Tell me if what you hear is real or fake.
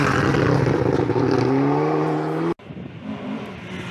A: real